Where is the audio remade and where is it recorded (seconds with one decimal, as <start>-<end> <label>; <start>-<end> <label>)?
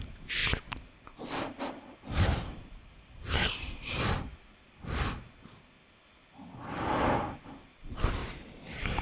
0.0-9.0 recorded